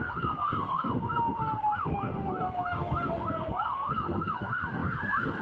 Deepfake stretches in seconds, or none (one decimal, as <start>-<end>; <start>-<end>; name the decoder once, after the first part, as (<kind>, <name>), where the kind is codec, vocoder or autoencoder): 0.0-5.4 (autoencoder, DAC-VAE)